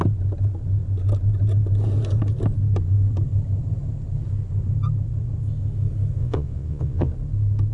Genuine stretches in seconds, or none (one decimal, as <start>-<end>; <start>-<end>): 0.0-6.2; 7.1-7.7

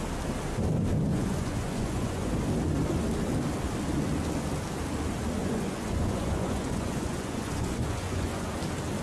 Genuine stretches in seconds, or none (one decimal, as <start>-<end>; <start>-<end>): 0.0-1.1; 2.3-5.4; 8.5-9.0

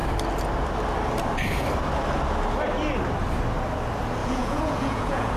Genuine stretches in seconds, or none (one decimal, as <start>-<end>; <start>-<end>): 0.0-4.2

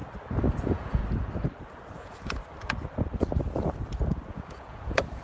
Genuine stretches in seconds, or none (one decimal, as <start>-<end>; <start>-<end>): 0.0-0.6; 1.0-2.0; 2.4-4.3

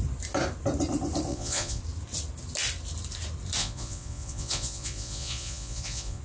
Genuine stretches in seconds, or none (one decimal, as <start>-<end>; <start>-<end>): 0.0-1.3; 1.8-3.6

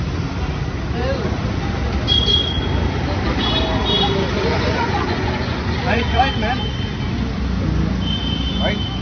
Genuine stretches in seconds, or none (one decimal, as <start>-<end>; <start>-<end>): 0.0-4.5; 6.2-9.0